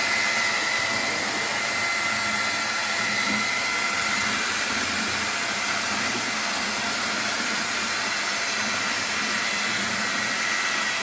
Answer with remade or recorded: recorded